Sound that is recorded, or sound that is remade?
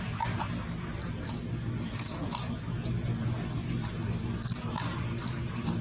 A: remade